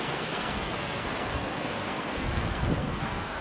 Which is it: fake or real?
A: fake